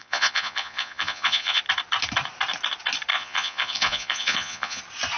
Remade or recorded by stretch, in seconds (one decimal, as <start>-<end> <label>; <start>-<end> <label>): 0.0-1.6 remade; 1.6-3.1 recorded; 3.1-4.8 remade; 4.8-5.2 recorded